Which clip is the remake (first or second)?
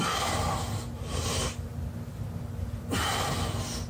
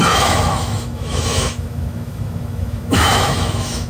second